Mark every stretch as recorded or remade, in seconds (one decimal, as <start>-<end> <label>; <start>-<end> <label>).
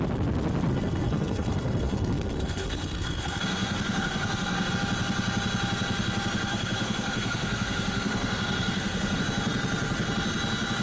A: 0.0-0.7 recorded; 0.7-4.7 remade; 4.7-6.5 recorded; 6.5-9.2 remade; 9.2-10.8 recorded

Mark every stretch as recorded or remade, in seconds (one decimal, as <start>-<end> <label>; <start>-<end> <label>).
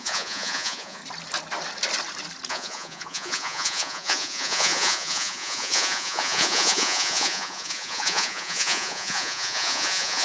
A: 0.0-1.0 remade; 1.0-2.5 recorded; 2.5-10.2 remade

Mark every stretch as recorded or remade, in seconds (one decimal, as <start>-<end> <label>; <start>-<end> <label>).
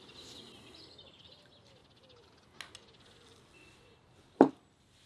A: 0.0-5.1 recorded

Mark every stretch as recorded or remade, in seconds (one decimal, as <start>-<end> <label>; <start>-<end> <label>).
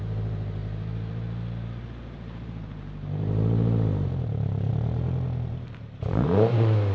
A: 0.0-6.9 remade